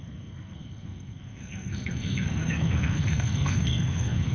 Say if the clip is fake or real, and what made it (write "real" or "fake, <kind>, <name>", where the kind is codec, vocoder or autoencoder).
fake, codec, SNAC